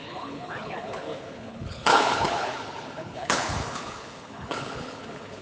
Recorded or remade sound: remade